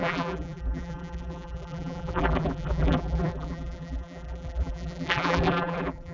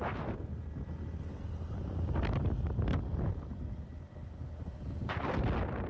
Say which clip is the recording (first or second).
second